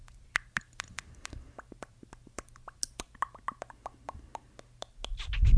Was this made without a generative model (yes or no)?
yes